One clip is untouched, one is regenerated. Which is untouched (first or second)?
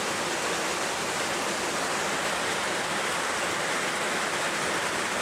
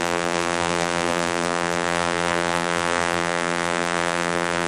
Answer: first